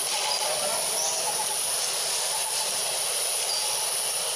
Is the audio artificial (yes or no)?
no